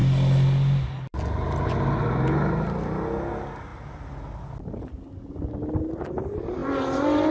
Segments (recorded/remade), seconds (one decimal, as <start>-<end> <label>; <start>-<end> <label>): 0.0-7.3 recorded

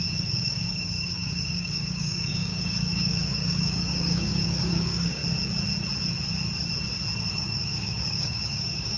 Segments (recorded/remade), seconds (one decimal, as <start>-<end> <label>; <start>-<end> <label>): 0.0-5.2 remade; 5.2-7.3 recorded; 7.3-9.0 remade

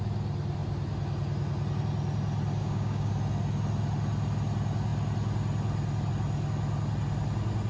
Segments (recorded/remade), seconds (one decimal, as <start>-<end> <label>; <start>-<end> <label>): 0.0-2.6 recorded; 2.6-3.1 remade; 3.1-7.7 recorded

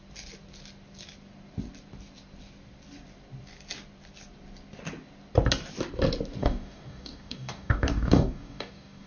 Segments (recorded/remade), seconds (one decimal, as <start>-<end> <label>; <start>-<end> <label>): 0.0-6.4 recorded; 6.4-9.1 remade

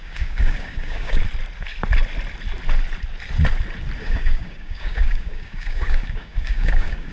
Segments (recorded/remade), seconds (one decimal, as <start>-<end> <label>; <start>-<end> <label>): 0.0-1.2 remade; 1.2-4.0 recorded; 4.0-7.1 remade

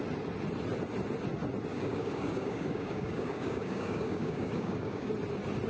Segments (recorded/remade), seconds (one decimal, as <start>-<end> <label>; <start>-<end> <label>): 0.0-1.7 recorded; 1.7-5.1 remade; 5.1-5.7 recorded

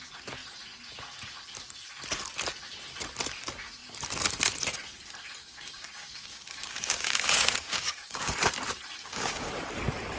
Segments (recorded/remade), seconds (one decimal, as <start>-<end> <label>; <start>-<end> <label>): 0.0-5.4 recorded; 5.4-8.3 remade; 8.3-9.0 recorded; 9.0-9.5 remade; 9.5-10.2 recorded